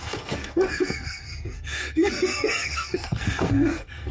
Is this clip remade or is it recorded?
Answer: remade